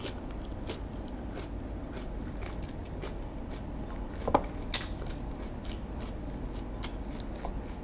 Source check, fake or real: real